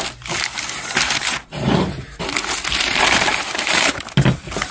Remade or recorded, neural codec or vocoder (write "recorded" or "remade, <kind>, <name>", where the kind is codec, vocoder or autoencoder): recorded